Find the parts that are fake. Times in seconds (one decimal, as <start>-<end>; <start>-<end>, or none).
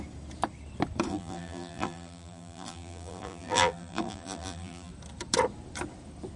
1.1-4.9